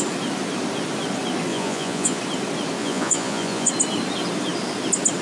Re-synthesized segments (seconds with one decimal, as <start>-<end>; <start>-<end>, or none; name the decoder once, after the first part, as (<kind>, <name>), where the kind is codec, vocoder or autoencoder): 1.5-2.2 (vocoder, Vocos); 2.8-3.7